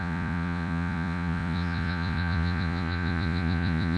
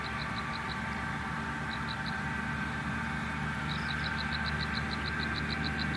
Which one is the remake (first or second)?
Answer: first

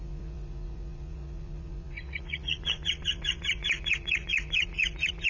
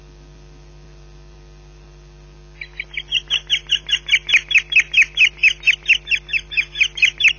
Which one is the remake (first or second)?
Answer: first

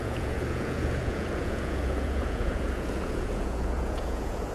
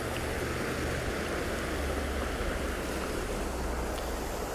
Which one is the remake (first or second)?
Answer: first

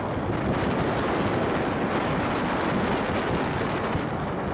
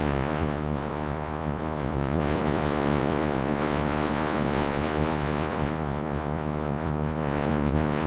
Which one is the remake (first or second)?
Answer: second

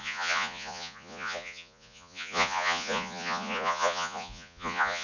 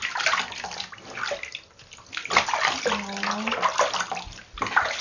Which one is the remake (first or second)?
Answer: first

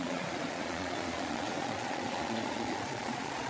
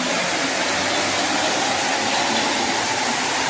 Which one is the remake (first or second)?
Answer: first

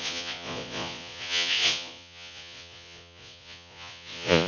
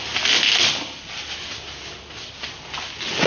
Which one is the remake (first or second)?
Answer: first